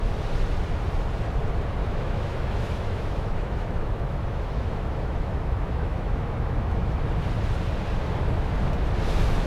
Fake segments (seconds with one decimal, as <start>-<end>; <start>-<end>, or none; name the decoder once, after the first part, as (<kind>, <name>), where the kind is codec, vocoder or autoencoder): 1.8-7.0 (autoencoder, DAC-VAE)